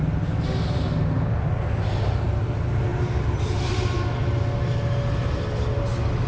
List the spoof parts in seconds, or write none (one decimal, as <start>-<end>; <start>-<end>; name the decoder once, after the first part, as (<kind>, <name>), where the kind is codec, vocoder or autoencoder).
2.9-4.3 (vocoder, BigVGAN v2)